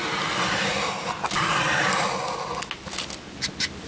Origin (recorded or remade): recorded